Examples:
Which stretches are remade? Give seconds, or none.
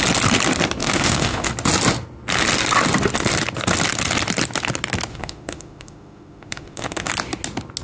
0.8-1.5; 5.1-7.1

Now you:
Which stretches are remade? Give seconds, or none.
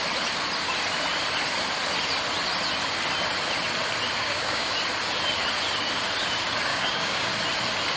4.2-4.7; 6.7-7.3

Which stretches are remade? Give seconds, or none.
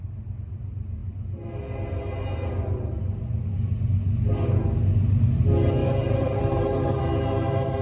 5.8-7.0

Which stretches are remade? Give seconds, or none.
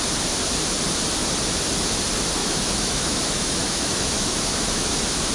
2.4-5.3